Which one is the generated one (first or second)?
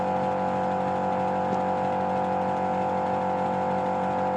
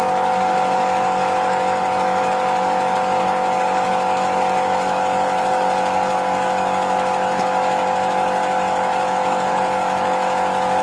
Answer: second